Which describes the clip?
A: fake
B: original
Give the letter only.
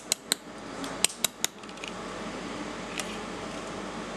B